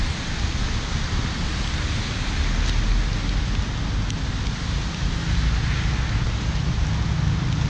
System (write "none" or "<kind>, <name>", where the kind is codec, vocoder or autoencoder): none